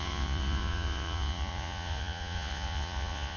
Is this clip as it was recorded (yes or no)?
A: no